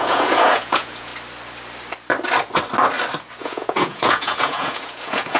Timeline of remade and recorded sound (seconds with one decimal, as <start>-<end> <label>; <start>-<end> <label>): 0.0-1.1 remade; 1.1-3.4 recorded; 3.4-5.4 remade

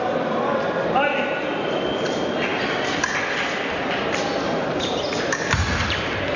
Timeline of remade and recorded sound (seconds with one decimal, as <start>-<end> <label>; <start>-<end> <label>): 0.0-6.4 recorded